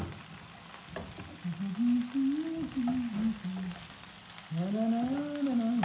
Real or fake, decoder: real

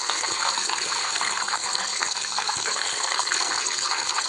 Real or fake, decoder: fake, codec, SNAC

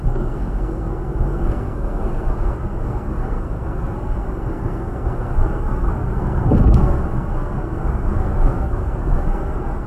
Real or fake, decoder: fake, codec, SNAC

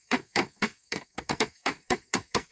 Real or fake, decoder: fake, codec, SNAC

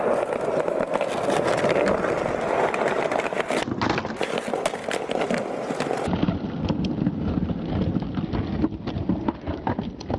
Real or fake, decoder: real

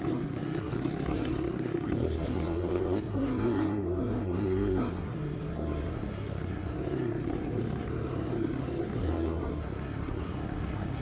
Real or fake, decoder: fake, codec, SNAC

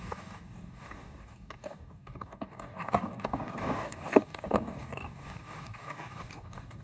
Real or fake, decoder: fake, codec, DAC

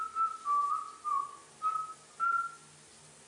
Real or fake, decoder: real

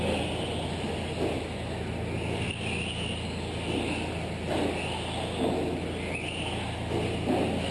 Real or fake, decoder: real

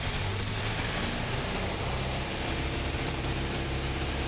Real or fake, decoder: fake, vocoder, BigVGAN v2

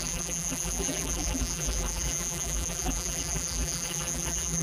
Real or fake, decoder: fake, vocoder, BigVGAN v2